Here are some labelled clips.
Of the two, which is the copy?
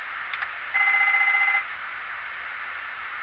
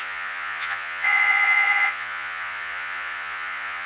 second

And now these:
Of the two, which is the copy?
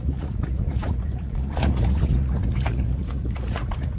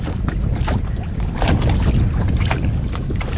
first